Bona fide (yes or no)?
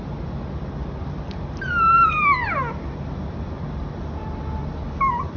yes